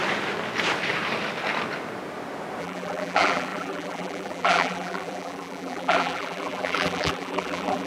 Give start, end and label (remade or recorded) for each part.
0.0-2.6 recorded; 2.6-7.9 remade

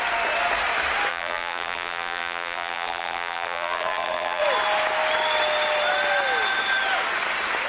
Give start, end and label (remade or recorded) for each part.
0.0-1.1 recorded; 1.1-4.4 remade; 4.4-7.7 recorded

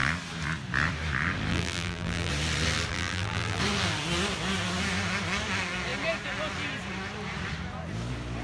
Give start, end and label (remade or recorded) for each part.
0.0-1.5 recorded; 1.5-2.3 remade; 2.3-2.9 recorded; 2.9-3.6 remade; 3.6-8.4 recorded

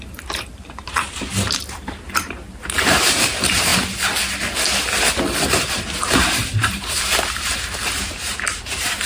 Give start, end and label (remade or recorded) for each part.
0.0-3.7 remade; 3.7-5.7 recorded; 5.7-9.1 remade

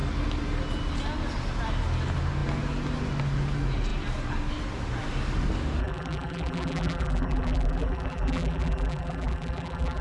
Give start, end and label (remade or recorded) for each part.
0.0-5.8 recorded; 5.8-10.0 remade

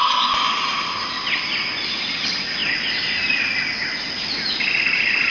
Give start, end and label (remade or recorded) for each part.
0.0-2.1 recorded; 2.1-2.6 remade; 2.6-4.8 recorded; 4.8-5.3 remade